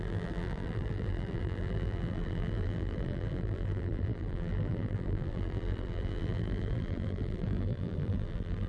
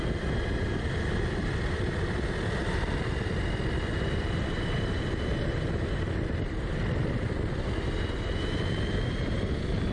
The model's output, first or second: first